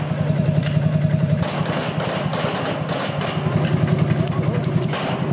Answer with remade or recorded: remade